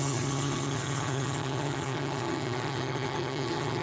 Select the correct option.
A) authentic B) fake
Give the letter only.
B